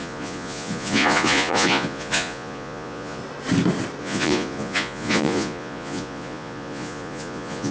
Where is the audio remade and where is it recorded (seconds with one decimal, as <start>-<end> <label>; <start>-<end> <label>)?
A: 0.0-3.2 remade; 3.2-4.0 recorded; 4.0-7.7 remade